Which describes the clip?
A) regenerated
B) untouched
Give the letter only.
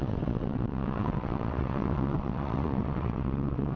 A